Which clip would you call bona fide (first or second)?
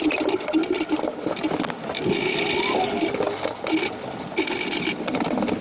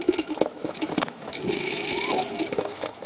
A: first